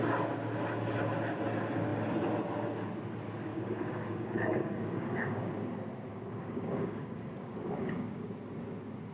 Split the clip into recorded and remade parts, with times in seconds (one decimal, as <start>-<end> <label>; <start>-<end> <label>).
0.0-3.5 recorded; 3.5-5.5 remade; 5.5-6.1 recorded; 6.1-8.3 remade; 8.3-9.1 recorded